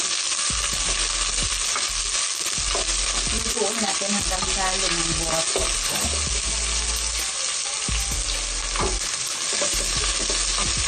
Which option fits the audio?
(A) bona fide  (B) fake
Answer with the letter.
A